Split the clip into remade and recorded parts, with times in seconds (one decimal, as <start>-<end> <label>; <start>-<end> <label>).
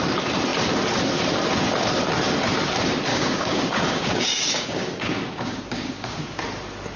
0.0-3.1 recorded; 3.1-6.4 remade; 6.4-7.0 recorded